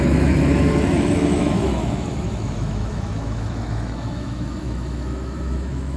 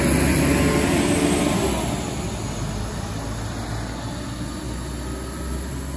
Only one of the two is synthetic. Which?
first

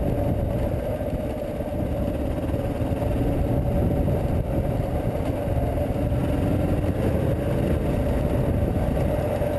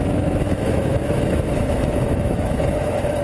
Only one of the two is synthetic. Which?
second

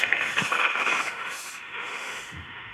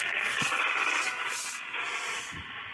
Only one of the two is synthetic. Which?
first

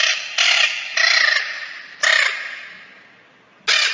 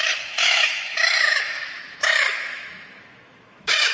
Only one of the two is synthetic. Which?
second